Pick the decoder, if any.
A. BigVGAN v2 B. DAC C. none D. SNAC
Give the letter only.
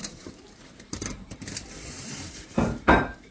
A